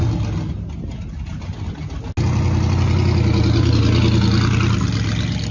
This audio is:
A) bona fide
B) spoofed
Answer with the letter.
A